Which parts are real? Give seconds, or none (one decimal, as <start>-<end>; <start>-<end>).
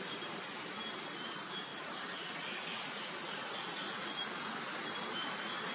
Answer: 0.0-1.7; 4.6-5.7